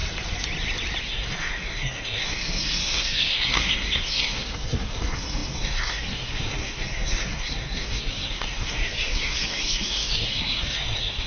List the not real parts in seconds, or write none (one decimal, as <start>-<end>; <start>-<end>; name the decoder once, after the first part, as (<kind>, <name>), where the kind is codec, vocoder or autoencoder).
1.0-11.3 (codec, SNAC)